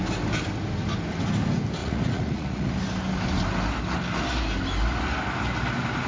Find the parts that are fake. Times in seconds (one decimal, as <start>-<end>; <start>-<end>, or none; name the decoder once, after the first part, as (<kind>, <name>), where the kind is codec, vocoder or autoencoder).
1.8-2.7 (vocoder, Vocos)